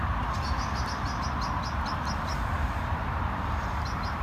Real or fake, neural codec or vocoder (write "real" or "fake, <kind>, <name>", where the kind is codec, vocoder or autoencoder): real